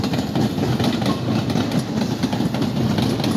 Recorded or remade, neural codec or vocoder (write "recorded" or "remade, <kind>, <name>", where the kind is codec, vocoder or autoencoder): recorded